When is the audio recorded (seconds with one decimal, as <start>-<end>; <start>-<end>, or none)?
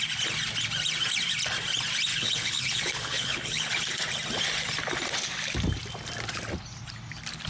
0.0-2.1; 3.7-7.5